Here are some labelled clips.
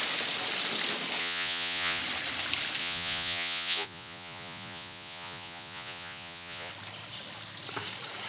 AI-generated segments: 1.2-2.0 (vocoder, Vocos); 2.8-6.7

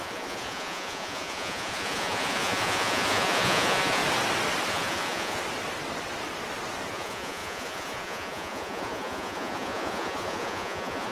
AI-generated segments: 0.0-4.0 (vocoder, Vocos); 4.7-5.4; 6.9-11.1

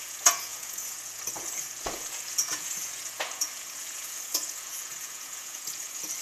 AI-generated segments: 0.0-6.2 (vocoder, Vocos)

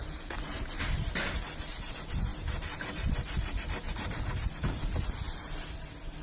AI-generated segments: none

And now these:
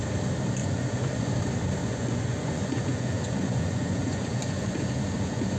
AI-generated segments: 0.6-1.3 (vocoder, Vocos); 1.8-5.6

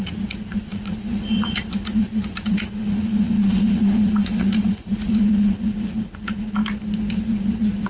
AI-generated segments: 0.0-6.6 (vocoder, Vocos); 7.1-7.9